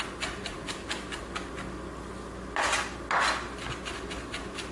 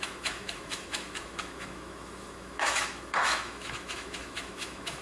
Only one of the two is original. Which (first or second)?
first